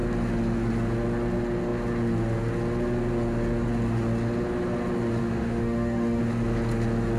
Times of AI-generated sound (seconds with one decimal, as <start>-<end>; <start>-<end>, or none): 5.2-6.2